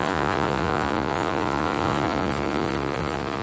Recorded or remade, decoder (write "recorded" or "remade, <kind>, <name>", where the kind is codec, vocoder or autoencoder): remade, vocoder, Vocos